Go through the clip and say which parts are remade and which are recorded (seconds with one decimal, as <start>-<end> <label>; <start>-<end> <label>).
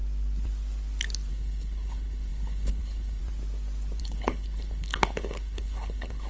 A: 0.0-1.3 recorded; 1.3-3.2 remade; 3.2-4.0 recorded; 4.0-6.3 remade